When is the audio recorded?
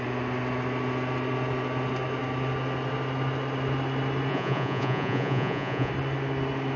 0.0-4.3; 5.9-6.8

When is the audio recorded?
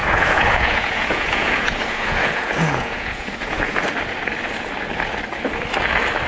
3.8-6.3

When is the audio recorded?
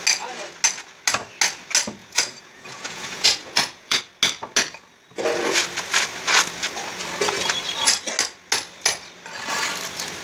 0.0-2.0; 4.0-10.2